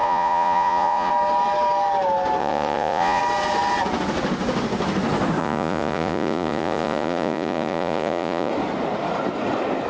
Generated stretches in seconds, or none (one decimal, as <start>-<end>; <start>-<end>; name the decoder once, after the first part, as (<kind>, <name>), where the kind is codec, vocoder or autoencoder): 0.0-1.1 (vocoder, Vocos); 2.4-3.2; 5.4-8.5